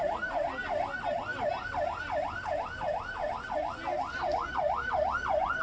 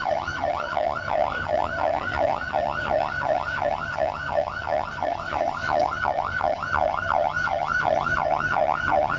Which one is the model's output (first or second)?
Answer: second